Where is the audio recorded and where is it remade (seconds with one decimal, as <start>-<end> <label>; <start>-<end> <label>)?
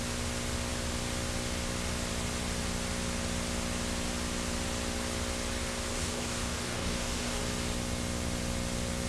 0.0-5.9 recorded; 5.9-7.4 remade; 7.4-9.1 recorded